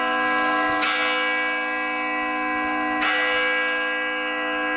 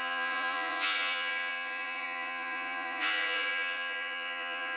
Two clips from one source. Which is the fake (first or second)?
second